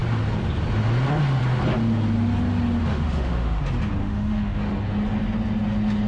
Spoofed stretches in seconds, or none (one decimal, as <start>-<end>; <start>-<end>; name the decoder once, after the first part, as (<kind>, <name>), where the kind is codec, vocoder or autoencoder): 2.9-3.6 (autoencoder, DAC-VAE); 4.0-4.6